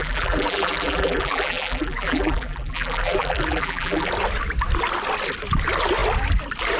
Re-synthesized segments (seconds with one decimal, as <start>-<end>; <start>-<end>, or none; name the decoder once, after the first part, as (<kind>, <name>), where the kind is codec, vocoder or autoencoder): 0.0-4.1 (vocoder, BigVGAN v2)